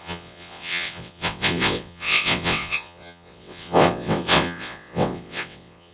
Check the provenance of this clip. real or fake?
fake